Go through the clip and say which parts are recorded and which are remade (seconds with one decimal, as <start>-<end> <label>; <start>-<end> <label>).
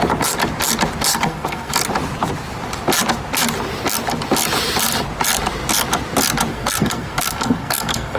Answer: 0.0-1.1 recorded; 1.1-1.7 remade; 1.7-6.5 recorded; 6.5-8.2 remade